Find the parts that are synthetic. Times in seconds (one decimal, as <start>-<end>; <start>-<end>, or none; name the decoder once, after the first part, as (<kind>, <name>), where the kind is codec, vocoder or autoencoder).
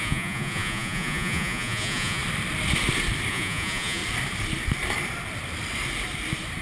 0.0-2.2 (vocoder, Vocos); 3.3-4.0